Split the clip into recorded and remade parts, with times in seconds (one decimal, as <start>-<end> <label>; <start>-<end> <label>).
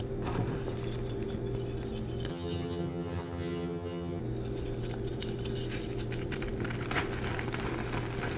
0.0-2.3 recorded; 2.3-4.2 remade; 4.2-8.4 recorded